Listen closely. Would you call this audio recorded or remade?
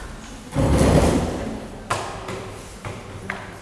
recorded